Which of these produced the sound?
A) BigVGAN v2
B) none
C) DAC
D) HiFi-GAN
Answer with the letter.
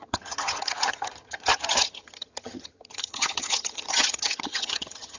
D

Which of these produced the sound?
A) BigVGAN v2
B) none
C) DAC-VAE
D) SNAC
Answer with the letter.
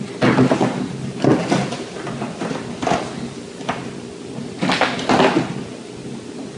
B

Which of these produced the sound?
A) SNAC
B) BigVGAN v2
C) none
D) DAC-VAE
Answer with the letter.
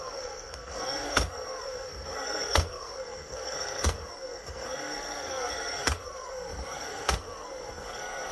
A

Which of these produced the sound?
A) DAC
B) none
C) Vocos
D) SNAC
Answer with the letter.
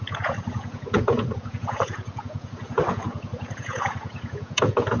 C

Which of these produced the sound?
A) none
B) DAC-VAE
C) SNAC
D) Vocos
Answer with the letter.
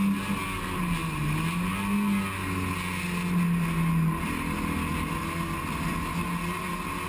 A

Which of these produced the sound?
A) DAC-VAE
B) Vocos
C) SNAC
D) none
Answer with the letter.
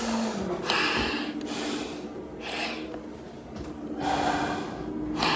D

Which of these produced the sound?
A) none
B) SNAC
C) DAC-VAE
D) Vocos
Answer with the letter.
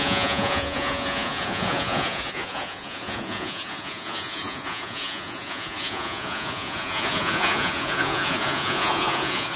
D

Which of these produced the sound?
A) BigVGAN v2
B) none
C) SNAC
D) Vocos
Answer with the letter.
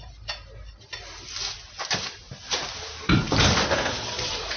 B